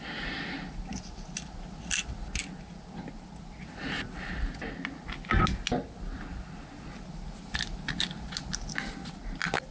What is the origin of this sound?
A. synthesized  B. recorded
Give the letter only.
B